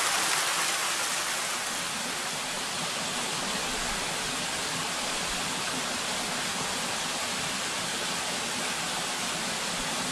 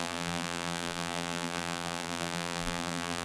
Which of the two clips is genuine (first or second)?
first